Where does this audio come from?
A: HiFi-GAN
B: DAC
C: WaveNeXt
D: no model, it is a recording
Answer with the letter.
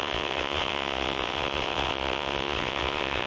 C